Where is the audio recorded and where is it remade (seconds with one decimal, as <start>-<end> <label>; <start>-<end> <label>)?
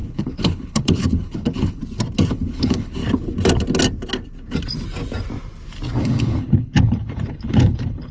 0.0-1.8 remade; 1.8-2.3 recorded; 2.3-3.0 remade; 3.0-6.0 recorded; 6.0-8.1 remade